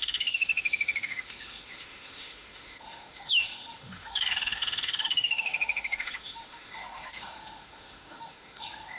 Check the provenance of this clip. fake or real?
fake